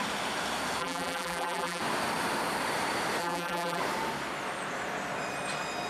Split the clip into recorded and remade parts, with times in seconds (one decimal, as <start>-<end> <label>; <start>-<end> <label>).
0.0-0.8 recorded; 0.8-1.8 remade; 1.8-3.2 recorded; 3.2-3.8 remade; 3.8-5.9 recorded